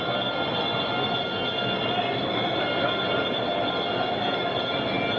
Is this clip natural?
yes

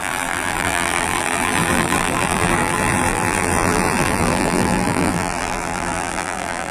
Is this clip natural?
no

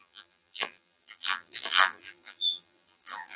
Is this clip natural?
no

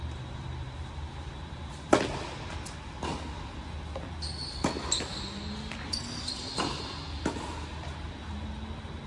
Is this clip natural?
yes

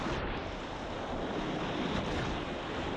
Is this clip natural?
yes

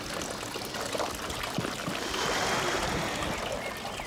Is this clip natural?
yes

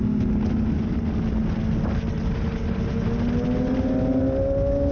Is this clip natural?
yes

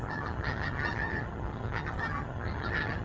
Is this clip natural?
no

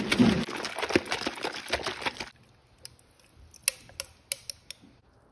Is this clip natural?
yes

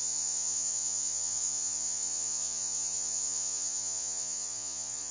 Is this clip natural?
no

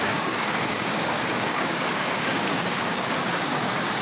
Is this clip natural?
no